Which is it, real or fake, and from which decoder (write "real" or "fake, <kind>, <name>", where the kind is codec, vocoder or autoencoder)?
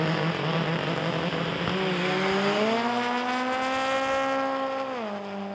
real